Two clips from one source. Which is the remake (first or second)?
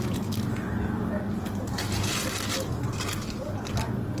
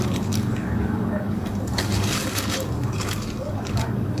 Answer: second